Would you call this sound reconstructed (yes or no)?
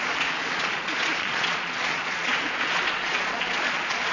yes